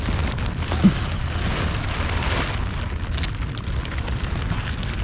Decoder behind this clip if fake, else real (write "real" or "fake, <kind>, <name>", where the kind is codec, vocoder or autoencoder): real